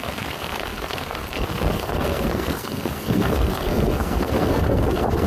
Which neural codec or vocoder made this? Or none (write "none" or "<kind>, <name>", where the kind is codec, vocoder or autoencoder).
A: codec, SNAC